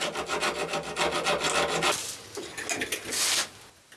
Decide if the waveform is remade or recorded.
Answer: recorded